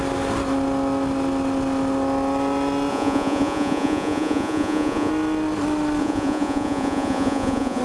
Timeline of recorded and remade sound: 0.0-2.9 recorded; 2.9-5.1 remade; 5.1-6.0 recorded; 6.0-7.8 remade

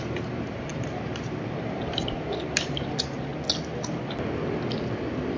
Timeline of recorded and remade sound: 0.0-3.3 remade; 3.3-5.4 recorded

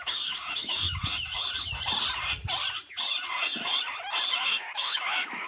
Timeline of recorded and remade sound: 0.0-1.0 remade; 1.0-4.3 recorded; 4.3-5.5 remade

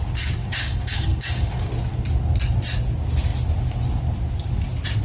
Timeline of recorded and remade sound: 0.0-0.4 recorded; 0.4-1.7 remade; 1.7-5.0 recorded

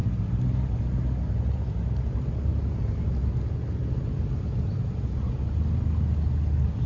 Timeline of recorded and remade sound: 0.0-6.9 recorded

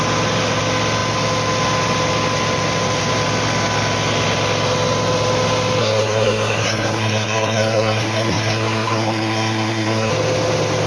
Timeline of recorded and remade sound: 0.0-5.8 recorded; 5.8-10.1 remade; 10.1-10.9 recorded